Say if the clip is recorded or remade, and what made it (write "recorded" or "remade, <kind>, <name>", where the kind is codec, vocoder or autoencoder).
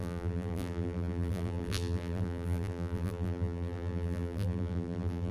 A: remade, vocoder, BigVGAN v2